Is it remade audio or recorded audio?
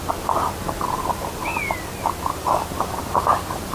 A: recorded